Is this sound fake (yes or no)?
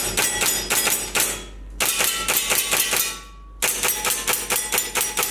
no